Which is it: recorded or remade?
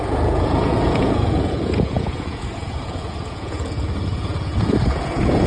remade